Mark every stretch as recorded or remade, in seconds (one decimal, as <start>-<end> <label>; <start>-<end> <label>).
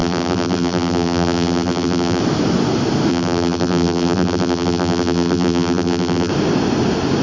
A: 0.0-2.2 remade; 2.2-3.1 recorded; 3.1-6.3 remade; 6.3-7.2 recorded